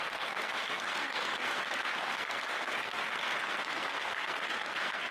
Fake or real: fake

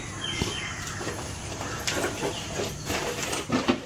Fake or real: real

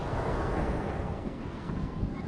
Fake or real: fake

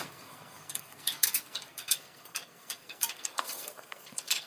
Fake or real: fake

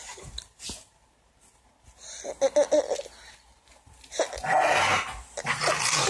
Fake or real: real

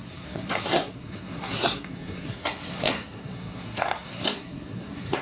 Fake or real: fake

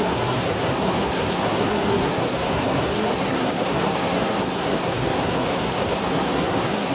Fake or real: fake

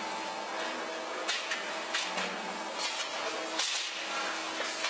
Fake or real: real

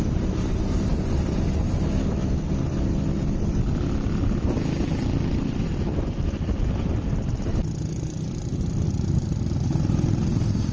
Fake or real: real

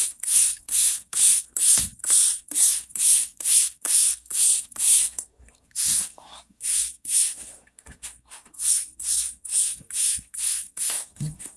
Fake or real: fake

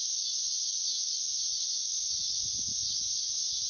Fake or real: real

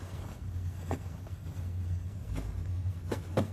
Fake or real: fake